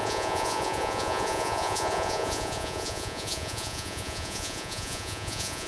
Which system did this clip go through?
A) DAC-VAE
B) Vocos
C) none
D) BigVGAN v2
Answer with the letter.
B